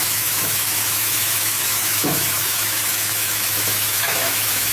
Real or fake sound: fake